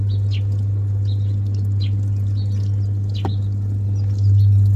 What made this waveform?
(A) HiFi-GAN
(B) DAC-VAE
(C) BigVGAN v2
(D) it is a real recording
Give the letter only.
D